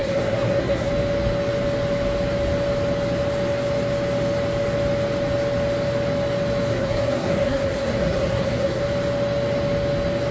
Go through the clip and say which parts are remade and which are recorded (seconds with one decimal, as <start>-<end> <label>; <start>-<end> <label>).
0.0-0.9 remade; 0.9-6.7 recorded; 6.7-8.8 remade; 8.8-10.3 recorded